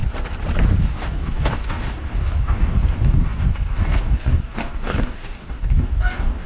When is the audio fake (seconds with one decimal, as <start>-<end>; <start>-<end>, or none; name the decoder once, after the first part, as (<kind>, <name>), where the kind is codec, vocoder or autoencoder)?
0.8-6.5 (codec, DAC)